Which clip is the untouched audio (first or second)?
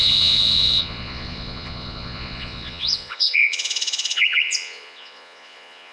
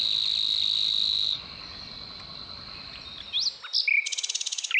second